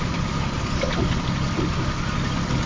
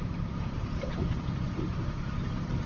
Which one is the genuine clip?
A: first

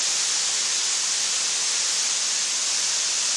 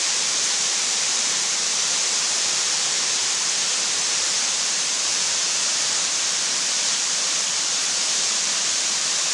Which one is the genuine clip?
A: first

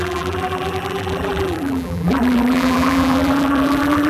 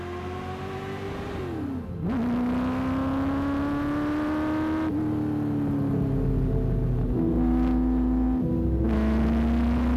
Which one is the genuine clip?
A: second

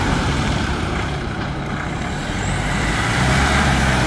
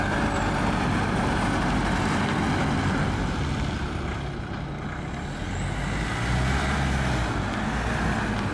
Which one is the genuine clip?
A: second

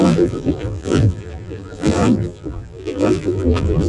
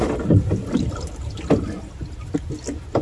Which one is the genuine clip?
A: second